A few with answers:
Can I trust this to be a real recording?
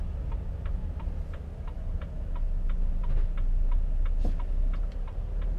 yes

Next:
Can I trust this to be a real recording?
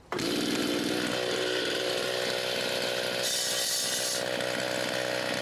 yes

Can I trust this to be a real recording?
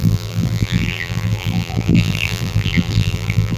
no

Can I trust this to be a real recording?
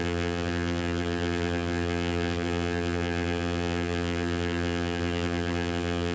no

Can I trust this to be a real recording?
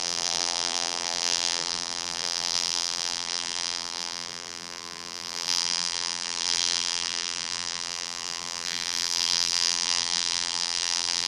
no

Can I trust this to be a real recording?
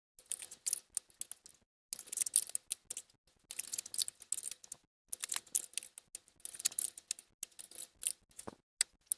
yes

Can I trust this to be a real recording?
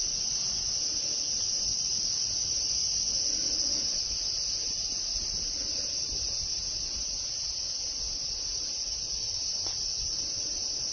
no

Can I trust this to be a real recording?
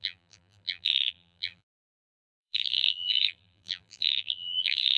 no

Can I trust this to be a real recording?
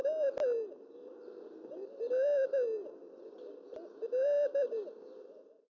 yes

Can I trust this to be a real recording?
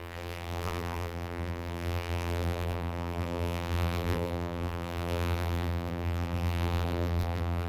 no